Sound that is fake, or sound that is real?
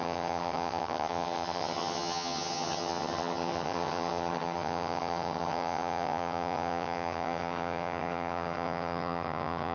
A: fake